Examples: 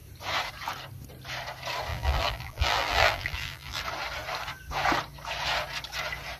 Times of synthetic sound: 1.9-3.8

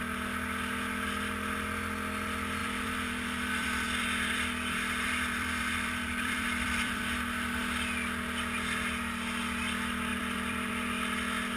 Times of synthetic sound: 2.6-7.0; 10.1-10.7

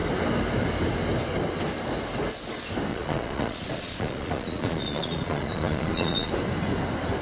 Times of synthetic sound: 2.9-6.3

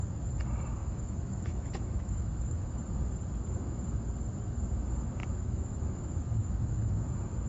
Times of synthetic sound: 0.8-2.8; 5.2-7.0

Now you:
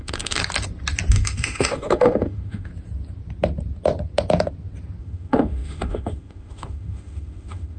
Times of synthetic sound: 0.0-0.4; 1.1-2.7; 5.0-7.8